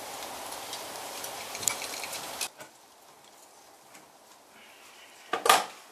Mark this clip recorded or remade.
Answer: remade